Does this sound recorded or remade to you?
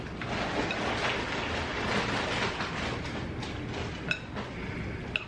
recorded